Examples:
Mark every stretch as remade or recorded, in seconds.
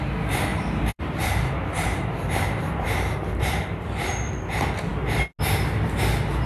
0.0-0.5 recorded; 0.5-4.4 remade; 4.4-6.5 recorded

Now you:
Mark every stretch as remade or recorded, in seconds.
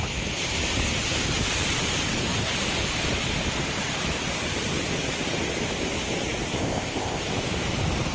0.0-6.6 recorded; 6.6-7.2 remade; 7.2-8.1 recorded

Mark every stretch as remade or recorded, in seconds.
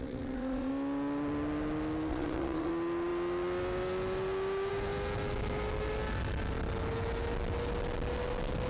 0.0-0.7 remade; 0.7-2.1 recorded; 2.1-2.7 remade; 2.7-8.7 recorded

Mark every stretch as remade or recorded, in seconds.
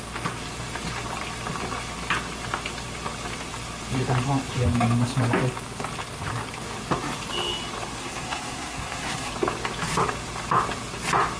0.0-8.0 recorded; 8.0-9.3 remade; 9.3-11.4 recorded